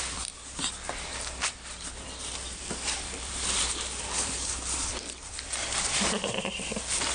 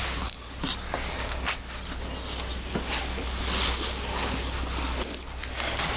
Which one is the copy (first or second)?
first